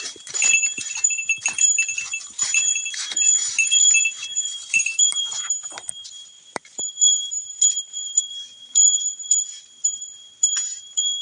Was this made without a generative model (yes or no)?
no